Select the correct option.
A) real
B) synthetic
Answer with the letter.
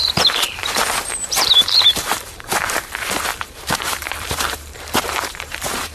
B